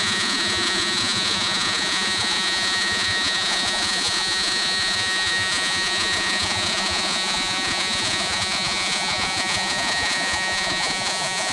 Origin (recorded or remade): remade